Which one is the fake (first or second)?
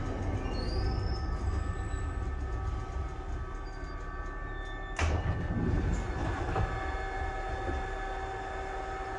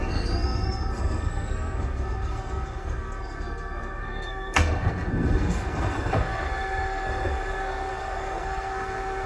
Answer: second